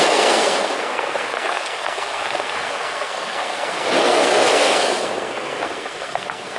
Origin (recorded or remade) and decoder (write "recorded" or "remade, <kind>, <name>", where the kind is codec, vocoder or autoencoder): remade, codec, SNAC